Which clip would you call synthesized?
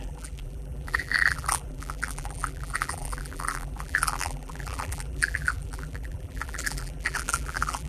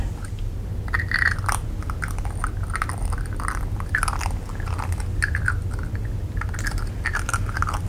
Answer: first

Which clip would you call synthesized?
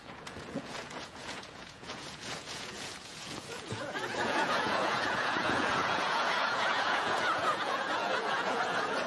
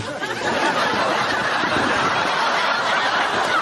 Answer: first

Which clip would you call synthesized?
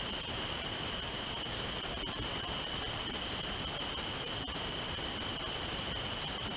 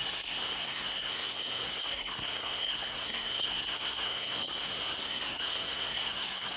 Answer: second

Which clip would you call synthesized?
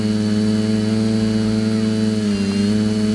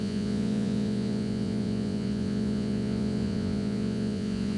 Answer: second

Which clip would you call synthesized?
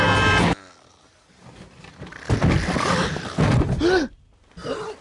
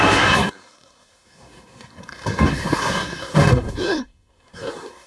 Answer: second